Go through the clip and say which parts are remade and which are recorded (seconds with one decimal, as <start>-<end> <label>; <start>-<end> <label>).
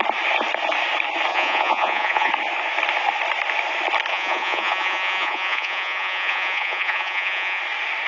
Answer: 0.0-1.3 recorded; 1.3-2.3 remade; 2.3-4.1 recorded; 4.1-7.6 remade; 7.6-8.1 recorded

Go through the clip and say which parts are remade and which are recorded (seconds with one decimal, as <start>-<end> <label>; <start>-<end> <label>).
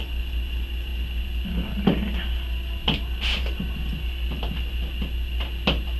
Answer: 0.0-6.0 recorded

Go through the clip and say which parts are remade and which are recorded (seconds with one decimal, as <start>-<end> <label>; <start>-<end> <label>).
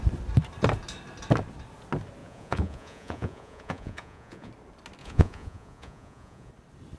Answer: 0.0-2.2 recorded; 2.2-4.5 remade; 4.5-5.0 recorded; 5.0-6.5 remade; 6.5-7.0 recorded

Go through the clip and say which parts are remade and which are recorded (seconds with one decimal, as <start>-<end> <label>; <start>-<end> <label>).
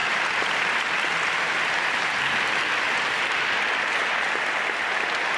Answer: 0.0-5.4 recorded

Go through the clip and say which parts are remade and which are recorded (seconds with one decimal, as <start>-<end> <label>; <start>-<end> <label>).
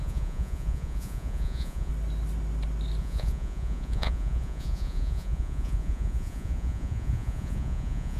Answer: 0.0-1.9 remade; 1.9-3.0 recorded; 3.0-8.2 remade